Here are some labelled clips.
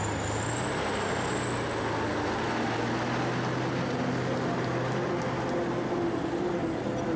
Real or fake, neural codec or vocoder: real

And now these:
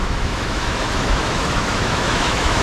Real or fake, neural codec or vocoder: fake, autoencoder, DAC-VAE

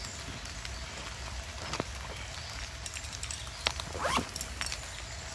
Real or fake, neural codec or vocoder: real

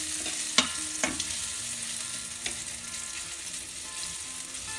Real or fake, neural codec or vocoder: real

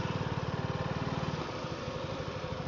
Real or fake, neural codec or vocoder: real